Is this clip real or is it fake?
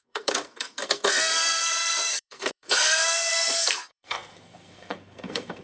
fake